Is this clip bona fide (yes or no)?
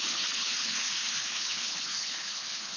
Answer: no